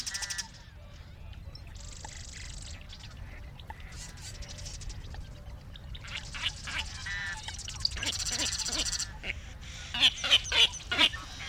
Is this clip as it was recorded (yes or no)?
yes